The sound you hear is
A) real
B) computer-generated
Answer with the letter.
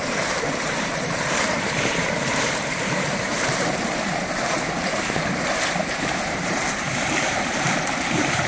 B